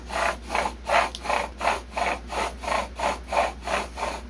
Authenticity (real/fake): real